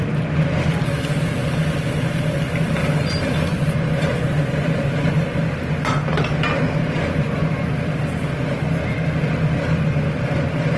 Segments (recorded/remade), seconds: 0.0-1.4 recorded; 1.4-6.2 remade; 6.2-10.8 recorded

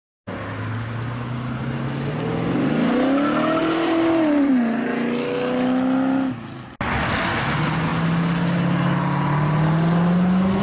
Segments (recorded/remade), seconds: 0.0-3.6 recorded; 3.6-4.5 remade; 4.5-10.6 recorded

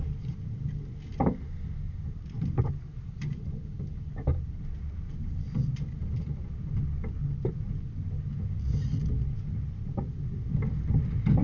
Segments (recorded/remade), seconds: 0.0-1.1 recorded; 1.1-6.3 remade; 6.3-11.4 recorded